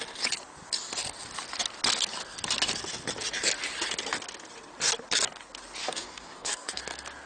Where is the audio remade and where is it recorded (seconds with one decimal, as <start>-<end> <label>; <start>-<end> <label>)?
0.0-5.8 recorded; 5.8-6.8 remade; 6.8-7.3 recorded

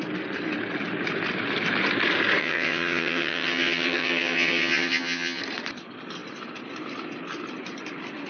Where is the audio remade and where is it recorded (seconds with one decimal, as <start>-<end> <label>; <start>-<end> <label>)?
0.0-2.4 recorded; 2.4-5.4 remade; 5.4-8.3 recorded

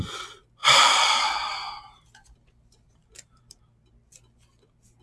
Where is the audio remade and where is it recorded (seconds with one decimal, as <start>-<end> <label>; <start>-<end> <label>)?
0.0-0.6 recorded; 0.6-3.6 remade; 3.6-5.0 recorded

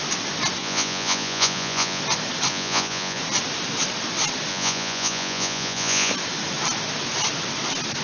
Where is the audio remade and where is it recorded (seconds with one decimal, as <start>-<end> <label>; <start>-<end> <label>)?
0.0-0.6 recorded; 0.6-2.0 remade; 2.0-2.5 recorded; 2.5-3.2 remade; 3.2-4.5 recorded; 4.5-6.1 remade; 6.1-8.0 recorded

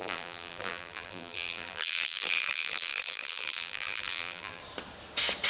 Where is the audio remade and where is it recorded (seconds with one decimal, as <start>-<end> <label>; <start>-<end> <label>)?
0.0-4.6 remade; 4.6-5.5 recorded